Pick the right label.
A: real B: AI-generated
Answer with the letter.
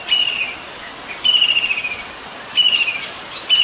A